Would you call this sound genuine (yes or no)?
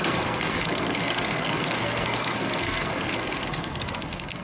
no